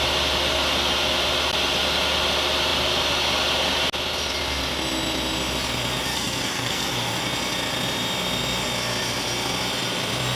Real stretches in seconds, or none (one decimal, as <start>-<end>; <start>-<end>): 0.0-6.1; 7.2-10.4